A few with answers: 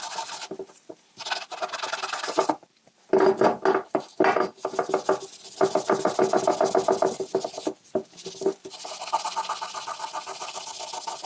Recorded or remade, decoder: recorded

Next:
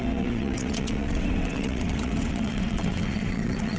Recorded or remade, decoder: remade, vocoder, WaveNeXt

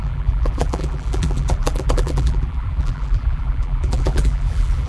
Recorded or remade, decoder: remade, vocoder, BigVGAN v2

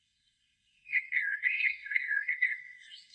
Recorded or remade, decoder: remade, codec, SNAC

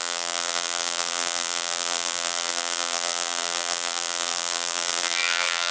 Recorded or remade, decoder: remade, vocoder, BigVGAN v2